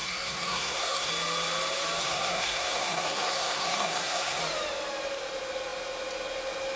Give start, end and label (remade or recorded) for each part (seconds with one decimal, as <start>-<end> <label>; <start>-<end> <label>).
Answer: 0.0-1.1 remade; 1.1-2.0 recorded; 2.0-4.4 remade; 4.4-6.8 recorded